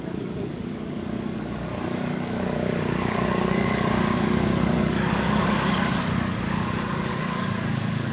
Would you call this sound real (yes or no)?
no